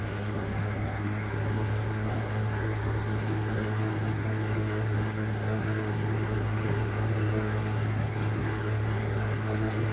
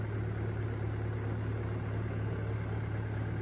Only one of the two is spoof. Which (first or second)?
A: first